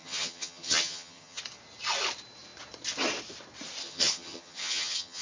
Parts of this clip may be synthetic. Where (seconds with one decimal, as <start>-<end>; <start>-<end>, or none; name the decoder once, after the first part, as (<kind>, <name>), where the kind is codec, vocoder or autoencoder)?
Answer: 0.0-1.4 (vocoder, HiFi-GAN); 3.8-5.2